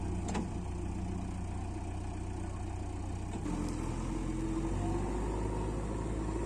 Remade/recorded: recorded